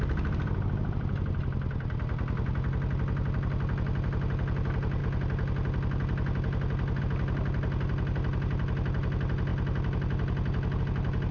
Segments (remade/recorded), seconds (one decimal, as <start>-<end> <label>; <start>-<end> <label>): 0.0-11.3 recorded